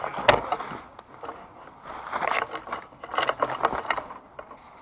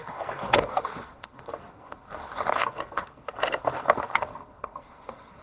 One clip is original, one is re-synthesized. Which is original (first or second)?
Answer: first